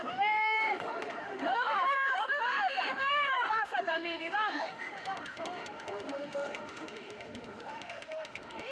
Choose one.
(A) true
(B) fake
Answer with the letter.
B